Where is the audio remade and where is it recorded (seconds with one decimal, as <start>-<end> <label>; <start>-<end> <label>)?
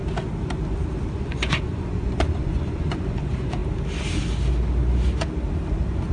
0.0-1.1 recorded; 1.1-3.6 remade; 3.6-6.1 recorded